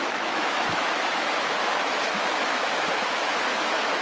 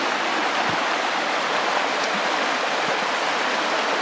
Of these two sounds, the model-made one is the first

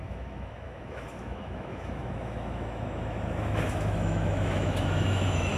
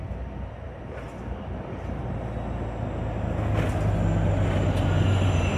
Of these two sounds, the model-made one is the first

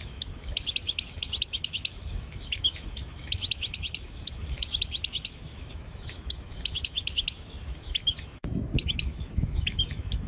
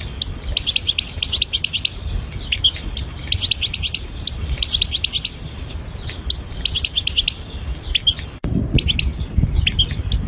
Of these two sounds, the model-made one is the first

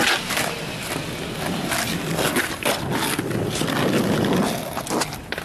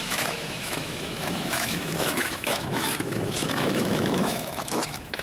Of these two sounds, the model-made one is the second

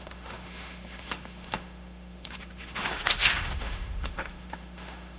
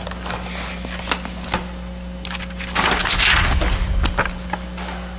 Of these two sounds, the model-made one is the first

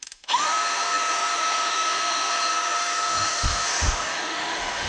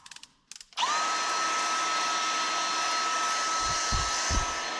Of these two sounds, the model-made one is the first